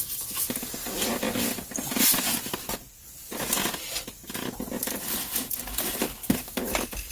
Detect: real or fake real